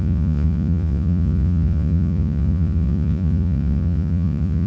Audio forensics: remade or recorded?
remade